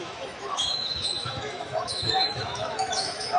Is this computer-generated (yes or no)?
yes